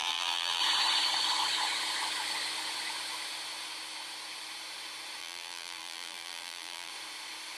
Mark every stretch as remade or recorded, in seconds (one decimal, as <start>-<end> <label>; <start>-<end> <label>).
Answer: 0.0-0.6 remade; 0.6-5.2 recorded; 5.2-6.9 remade; 6.9-7.6 recorded